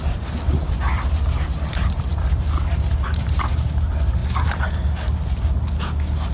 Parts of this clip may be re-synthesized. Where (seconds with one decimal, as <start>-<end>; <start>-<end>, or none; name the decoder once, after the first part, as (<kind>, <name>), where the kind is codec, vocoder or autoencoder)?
none